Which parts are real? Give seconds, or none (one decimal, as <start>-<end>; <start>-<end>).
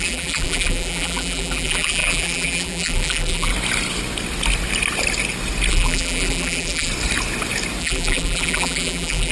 3.5-5.7; 6.9-7.8